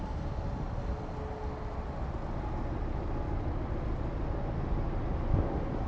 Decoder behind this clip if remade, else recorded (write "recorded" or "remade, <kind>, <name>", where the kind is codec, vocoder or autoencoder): recorded